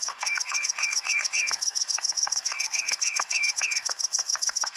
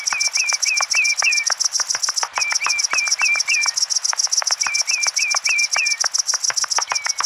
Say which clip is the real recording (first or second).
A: second